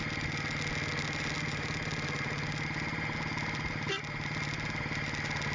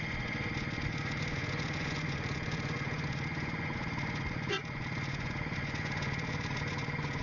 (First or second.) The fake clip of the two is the second